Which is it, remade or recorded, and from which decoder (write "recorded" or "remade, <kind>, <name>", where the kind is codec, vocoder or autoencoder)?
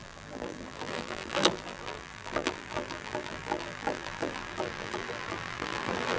remade, vocoder, BigVGAN v2